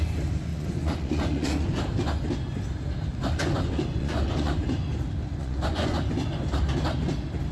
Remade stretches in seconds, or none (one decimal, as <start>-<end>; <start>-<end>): 0.5-1.8; 3.1-4.5; 5.4-6.0